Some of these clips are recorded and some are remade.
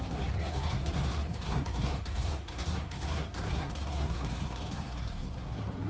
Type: remade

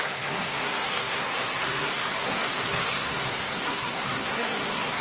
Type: remade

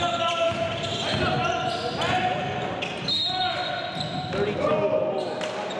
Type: recorded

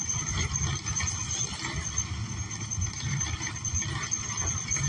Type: recorded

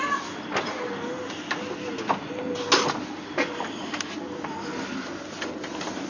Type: recorded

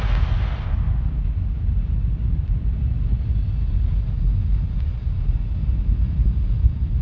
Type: recorded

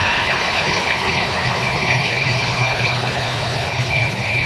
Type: remade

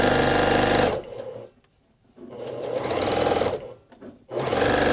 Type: recorded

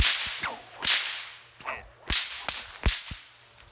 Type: recorded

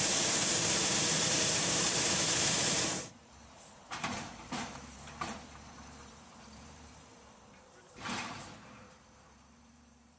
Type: remade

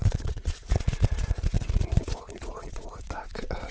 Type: remade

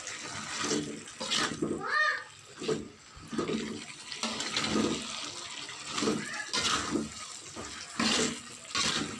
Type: recorded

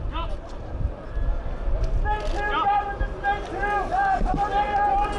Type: recorded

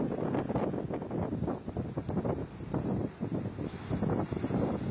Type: recorded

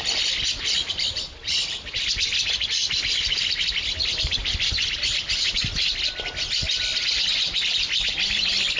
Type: recorded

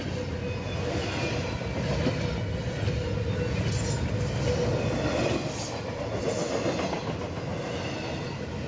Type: recorded